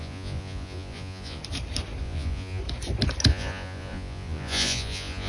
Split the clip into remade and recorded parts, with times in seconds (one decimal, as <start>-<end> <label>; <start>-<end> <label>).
0.0-1.4 remade; 1.4-2.0 recorded; 2.0-2.6 remade; 2.6-3.3 recorded; 3.3-5.3 remade